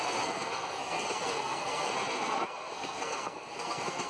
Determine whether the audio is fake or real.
fake